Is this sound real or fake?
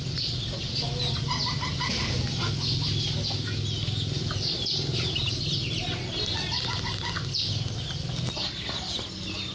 real